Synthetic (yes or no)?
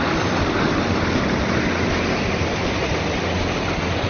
no